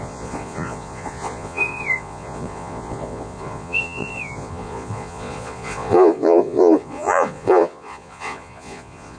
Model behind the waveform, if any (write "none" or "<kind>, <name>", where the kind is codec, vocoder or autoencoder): vocoder, Vocos